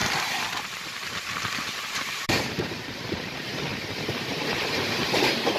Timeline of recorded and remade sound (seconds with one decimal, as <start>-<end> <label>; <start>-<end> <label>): 0.0-1.6 recorded; 1.6-3.7 remade; 3.7-4.2 recorded; 4.2-5.0 remade; 5.0-5.6 recorded

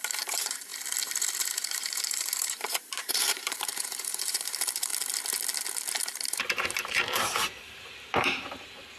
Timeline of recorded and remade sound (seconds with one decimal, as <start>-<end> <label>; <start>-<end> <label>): 0.0-0.7 remade; 0.7-1.5 recorded; 1.5-4.9 remade; 4.9-6.5 recorded; 6.5-9.0 remade

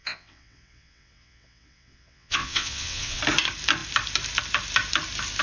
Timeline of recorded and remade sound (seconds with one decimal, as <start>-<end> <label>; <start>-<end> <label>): 0.0-3.2 remade; 3.2-5.4 recorded

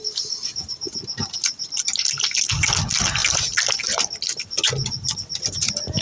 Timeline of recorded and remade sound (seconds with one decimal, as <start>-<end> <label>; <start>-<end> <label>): 0.0-6.0 recorded

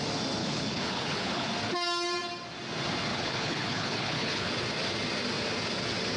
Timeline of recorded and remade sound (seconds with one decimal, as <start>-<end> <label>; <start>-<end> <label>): 0.0-0.4 recorded; 0.4-1.5 remade; 1.5-3.1 recorded; 3.1-4.5 remade; 4.5-6.2 recorded

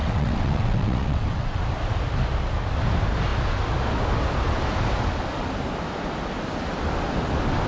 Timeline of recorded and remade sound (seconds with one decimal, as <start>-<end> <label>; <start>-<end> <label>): 0.0-1.6 remade; 1.6-7.7 recorded

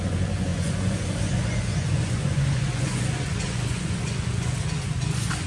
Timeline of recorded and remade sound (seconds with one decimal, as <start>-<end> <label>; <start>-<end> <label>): 0.0-5.5 remade